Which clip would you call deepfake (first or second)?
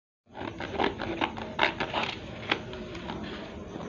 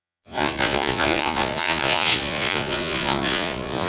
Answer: second